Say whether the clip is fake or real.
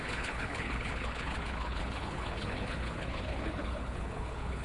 fake